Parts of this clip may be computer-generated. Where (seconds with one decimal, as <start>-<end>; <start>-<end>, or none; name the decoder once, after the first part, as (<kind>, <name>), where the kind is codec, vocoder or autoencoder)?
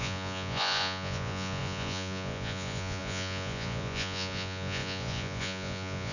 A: 0.0-6.1 (vocoder, Vocos)